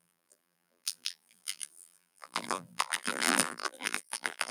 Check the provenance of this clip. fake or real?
fake